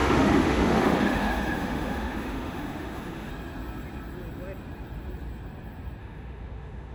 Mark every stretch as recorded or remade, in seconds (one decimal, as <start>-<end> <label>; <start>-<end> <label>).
0.0-3.3 remade; 3.3-6.0 recorded; 6.0-6.9 remade